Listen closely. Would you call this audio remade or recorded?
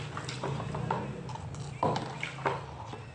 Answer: recorded